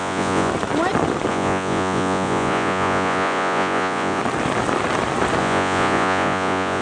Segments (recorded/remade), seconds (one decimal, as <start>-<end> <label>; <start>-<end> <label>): 0.0-0.5 remade; 0.5-1.3 recorded; 1.3-4.2 remade; 4.2-5.4 recorded; 5.4-6.8 remade